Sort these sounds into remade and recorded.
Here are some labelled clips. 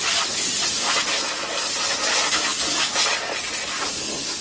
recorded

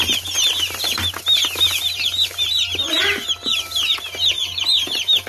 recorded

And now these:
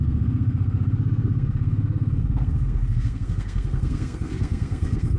remade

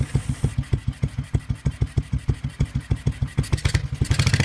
recorded